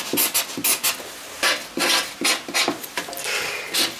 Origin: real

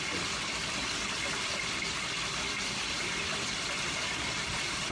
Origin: real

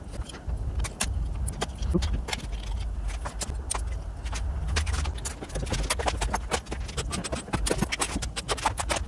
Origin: real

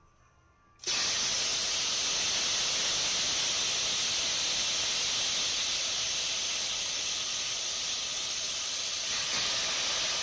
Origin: real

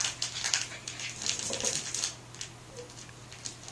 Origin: real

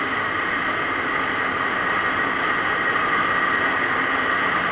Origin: real